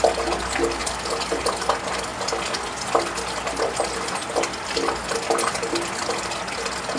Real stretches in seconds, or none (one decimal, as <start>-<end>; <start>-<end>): 0.0-0.8; 1.4-7.0

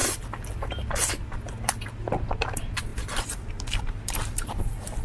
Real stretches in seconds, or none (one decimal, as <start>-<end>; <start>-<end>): 0.0-2.2